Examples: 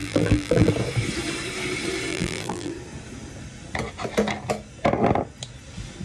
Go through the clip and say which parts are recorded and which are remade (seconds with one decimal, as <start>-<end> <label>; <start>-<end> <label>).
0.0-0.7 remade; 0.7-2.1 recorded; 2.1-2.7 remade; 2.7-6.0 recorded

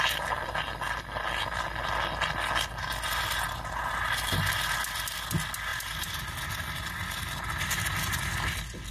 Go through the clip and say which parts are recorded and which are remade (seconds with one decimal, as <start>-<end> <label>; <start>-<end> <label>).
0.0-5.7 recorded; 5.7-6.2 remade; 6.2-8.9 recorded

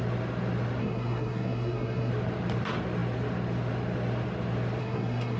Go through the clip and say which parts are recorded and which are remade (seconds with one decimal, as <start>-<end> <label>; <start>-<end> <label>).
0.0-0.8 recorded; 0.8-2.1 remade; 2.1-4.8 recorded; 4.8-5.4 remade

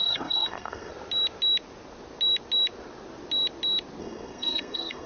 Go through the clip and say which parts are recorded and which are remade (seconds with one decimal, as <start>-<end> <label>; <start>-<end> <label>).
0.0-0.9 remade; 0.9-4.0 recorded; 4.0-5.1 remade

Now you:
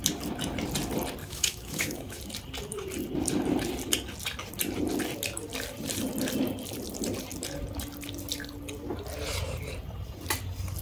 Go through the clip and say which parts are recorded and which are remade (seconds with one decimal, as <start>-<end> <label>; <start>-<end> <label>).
0.0-1.2 recorded; 1.2-2.2 remade; 2.2-10.8 recorded